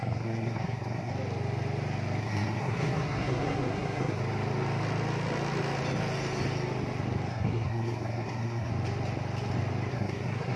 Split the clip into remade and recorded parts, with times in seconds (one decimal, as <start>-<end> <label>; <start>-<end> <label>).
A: 0.0-1.1 remade; 1.1-2.2 recorded; 2.2-4.2 remade; 4.2-7.3 recorded; 7.3-8.7 remade; 8.7-9.9 recorded; 9.9-10.6 remade